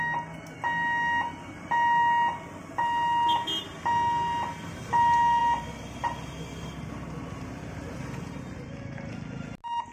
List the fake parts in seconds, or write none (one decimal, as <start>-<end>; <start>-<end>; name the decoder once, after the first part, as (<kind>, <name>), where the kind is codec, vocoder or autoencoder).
none